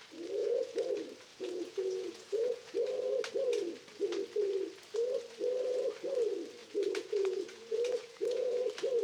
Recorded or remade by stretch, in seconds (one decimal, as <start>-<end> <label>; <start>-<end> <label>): 0.0-0.4 recorded; 0.4-0.9 remade; 0.9-1.3 recorded; 1.3-2.8 remade; 2.8-6.6 recorded; 6.6-8.6 remade; 8.6-9.0 recorded